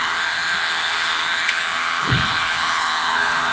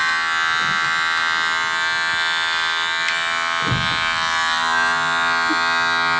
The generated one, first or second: first